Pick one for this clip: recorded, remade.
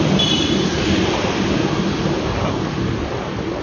recorded